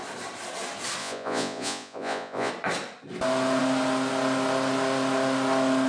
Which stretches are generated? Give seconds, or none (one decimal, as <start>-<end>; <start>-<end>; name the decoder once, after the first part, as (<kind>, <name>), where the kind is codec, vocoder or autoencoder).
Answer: 1.0-2.5 (vocoder, Vocos)